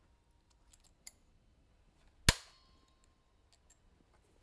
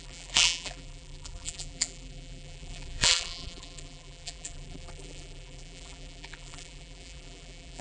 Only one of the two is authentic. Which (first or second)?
first